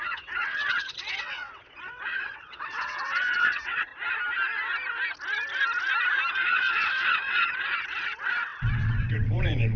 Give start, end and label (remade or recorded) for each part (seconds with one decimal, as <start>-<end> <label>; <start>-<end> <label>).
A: 0.0-3.9 remade; 3.9-6.3 recorded; 6.3-9.8 remade